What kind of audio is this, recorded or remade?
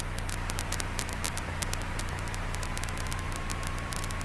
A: remade